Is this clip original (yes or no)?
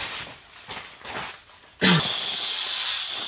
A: yes